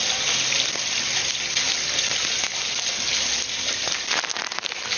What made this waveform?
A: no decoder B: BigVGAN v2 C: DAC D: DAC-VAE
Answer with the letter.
A